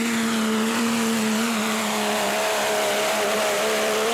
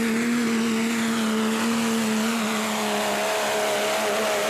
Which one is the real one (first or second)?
second